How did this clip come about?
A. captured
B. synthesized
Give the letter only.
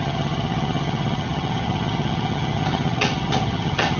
B